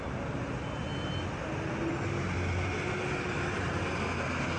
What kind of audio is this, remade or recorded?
recorded